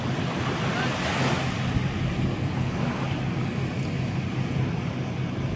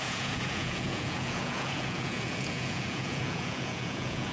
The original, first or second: first